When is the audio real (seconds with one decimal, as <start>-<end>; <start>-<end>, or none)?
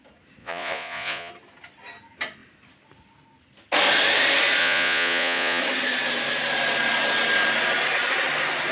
0.0-0.4; 1.3-4.6; 5.6-8.7